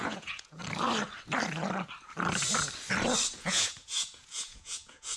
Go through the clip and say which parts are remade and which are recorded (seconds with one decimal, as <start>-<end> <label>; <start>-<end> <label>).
0.0-0.6 remade; 0.6-3.4 recorded; 3.4-5.2 remade